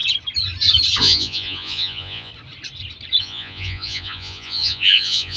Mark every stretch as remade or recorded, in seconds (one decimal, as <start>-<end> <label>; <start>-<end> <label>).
0.0-1.0 recorded; 1.0-2.3 remade; 2.3-3.2 recorded; 3.2-5.4 remade